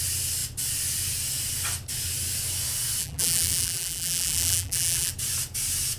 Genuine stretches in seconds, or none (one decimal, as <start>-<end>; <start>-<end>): 0.0-3.0; 5.1-6.0